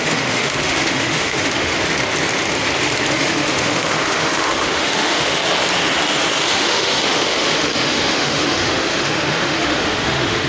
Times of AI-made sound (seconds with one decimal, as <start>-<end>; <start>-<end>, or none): 0.0-1.7; 3.1-5.4; 6.3-10.5